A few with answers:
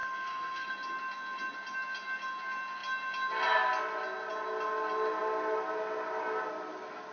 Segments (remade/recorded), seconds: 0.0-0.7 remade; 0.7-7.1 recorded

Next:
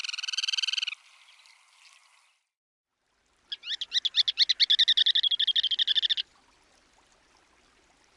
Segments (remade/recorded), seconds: 0.0-8.2 recorded

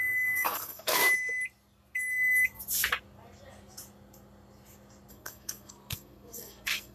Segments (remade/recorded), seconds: 0.0-1.0 remade; 1.0-5.1 recorded; 5.1-6.9 remade

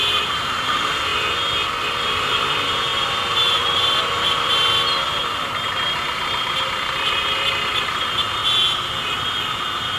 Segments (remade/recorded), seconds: 0.0-1.1 remade; 1.1-1.9 recorded; 1.9-4.5 remade; 4.5-5.2 recorded; 5.2-8.4 remade; 8.4-10.0 recorded

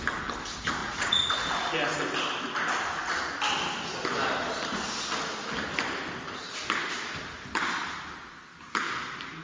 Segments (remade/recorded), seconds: 0.0-0.8 recorded; 0.8-1.5 remade; 1.5-9.4 recorded

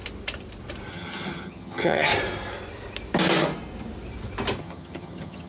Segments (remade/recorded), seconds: 0.0-0.9 recorded; 0.9-2.1 remade; 2.1-4.6 recorded; 4.6-5.5 remade

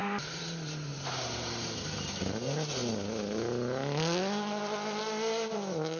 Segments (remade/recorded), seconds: 0.0-2.2 remade; 2.2-6.0 recorded